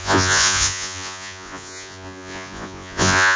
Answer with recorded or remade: remade